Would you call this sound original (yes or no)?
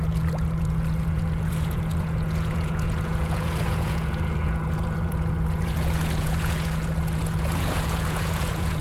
no